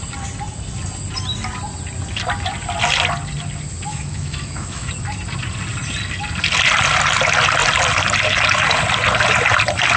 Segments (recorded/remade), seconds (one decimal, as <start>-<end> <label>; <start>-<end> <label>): 0.0-3.9 recorded; 3.9-4.9 remade; 4.9-10.0 recorded